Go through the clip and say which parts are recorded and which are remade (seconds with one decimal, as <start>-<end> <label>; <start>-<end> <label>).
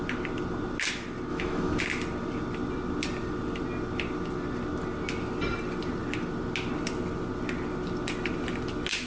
0.0-1.3 recorded; 1.3-1.8 remade; 1.8-9.1 recorded